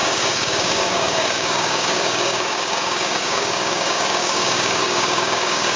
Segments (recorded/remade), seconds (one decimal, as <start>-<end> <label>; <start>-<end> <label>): 0.0-5.8 remade